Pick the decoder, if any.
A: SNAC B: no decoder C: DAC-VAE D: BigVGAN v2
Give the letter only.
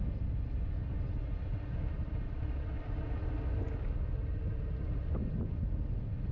B